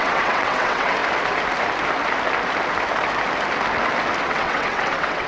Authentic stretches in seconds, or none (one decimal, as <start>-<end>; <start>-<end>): 1.0-4.2